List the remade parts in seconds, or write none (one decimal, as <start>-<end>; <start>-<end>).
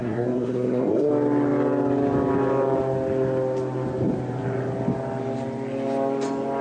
0.0-1.1